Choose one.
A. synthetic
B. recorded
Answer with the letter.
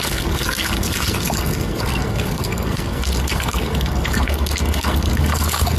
A